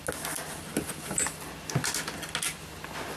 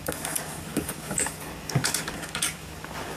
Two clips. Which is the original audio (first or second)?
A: first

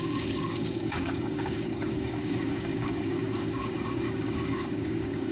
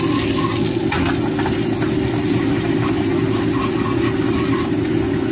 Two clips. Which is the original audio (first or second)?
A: second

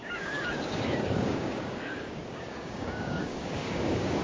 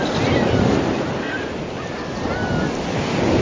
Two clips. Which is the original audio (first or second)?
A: second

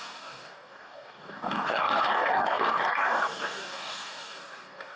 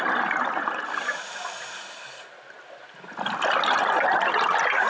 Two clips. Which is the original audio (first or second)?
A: second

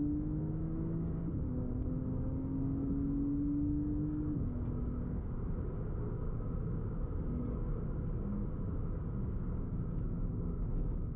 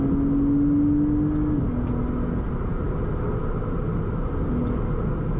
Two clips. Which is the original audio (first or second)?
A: second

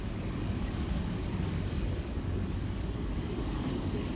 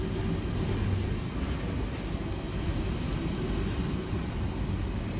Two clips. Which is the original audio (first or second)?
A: second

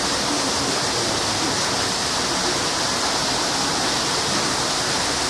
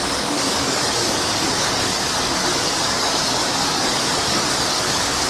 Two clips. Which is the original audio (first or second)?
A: first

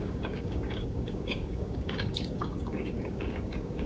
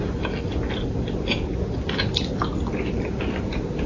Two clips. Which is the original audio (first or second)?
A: second